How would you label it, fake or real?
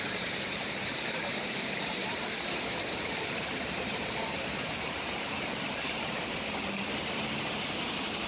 fake